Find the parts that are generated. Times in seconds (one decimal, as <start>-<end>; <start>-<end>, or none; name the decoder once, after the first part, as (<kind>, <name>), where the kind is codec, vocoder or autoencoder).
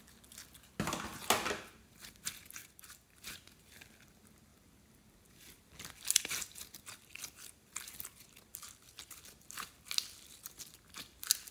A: 2.6-3.2 (vocoder, BigVGAN v2); 4.5-8.0; 8.5-9.2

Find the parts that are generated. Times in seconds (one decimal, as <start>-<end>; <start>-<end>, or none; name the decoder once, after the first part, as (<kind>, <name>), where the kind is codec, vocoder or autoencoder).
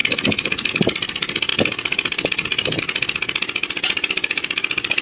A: 0.0-0.7 (vocoder, BigVGAN v2); 1.5-2.8; 3.6-5.0